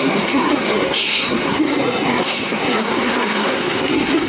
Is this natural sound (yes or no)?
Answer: no